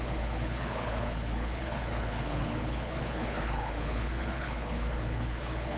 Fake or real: fake